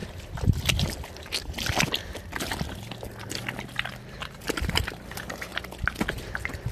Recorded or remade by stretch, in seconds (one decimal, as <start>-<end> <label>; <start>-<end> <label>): 0.0-4.0 recorded; 4.0-5.5 remade; 5.5-6.7 recorded